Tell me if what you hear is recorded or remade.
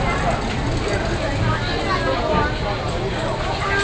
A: recorded